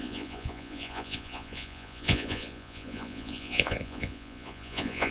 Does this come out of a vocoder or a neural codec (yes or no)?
yes